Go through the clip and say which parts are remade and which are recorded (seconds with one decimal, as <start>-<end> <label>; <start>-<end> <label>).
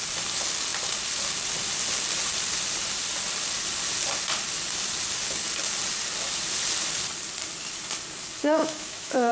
0.0-8.6 recorded; 8.6-9.3 remade